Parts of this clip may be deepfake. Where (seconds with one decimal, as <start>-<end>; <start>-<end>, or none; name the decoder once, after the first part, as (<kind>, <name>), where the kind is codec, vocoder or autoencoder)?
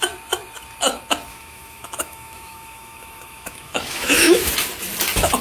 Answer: 1.3-4.5 (autoencoder, DAC-VAE)